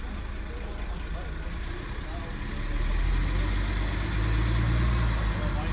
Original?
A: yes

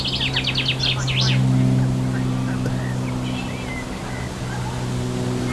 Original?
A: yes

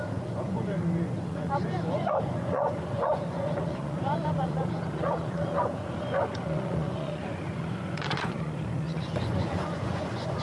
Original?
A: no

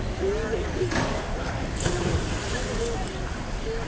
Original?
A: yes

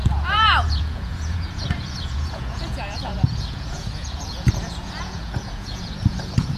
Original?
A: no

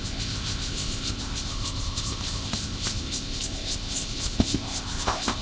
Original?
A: no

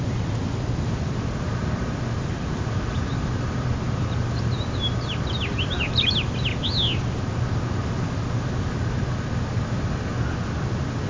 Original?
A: yes